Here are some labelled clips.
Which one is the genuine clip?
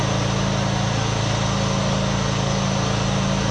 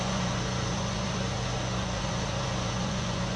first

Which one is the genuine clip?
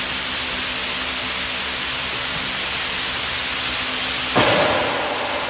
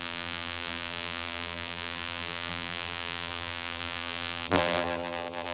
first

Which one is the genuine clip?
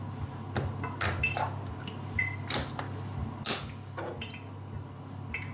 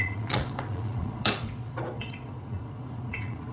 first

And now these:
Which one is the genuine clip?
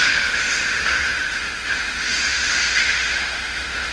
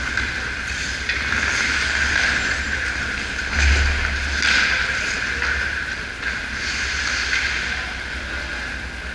second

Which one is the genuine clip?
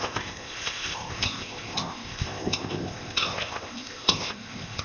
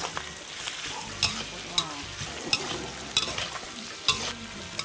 second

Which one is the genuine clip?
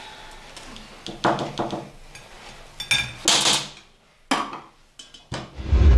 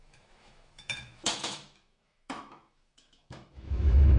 first